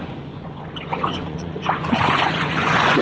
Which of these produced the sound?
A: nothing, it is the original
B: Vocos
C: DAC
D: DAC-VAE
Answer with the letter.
B